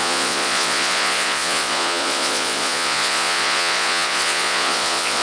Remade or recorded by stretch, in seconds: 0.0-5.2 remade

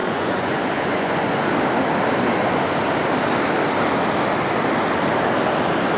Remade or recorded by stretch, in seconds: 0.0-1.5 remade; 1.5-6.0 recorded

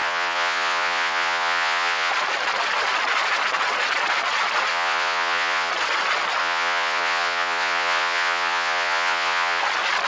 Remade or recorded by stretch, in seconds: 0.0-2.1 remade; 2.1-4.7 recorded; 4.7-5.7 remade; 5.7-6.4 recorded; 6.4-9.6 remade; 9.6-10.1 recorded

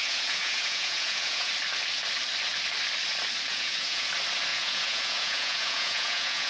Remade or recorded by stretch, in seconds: 0.0-1.5 remade; 1.5-3.5 recorded; 3.5-4.1 remade; 4.1-4.5 recorded; 4.5-6.5 remade

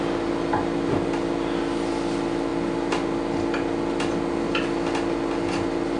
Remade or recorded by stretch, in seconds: 0.0-6.0 recorded